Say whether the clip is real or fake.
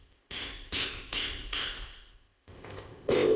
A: fake